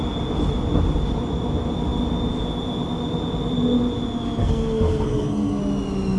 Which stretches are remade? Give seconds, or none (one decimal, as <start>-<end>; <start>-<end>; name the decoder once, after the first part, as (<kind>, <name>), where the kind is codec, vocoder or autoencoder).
4.4-5.6 (codec, SNAC)